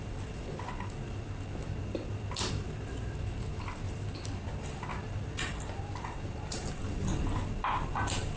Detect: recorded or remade recorded